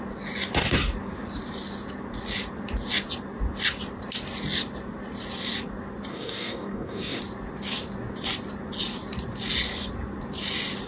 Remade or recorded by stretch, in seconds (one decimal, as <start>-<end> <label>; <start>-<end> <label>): 0.0-6.1 recorded; 6.1-7.2 remade; 7.2-10.9 recorded